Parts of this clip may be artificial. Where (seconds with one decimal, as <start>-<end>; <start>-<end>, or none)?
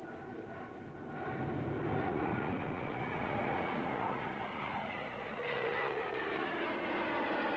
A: 1.9-6.5